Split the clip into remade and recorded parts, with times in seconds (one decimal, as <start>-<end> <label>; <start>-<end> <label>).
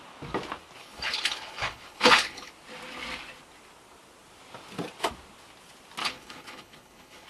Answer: 0.0-0.8 recorded; 0.8-2.5 remade; 2.5-6.0 recorded; 6.0-7.3 remade